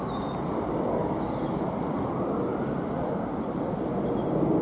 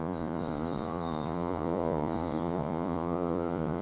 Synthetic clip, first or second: second